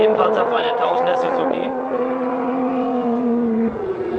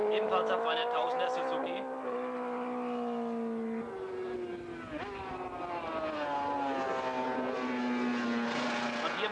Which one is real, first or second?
second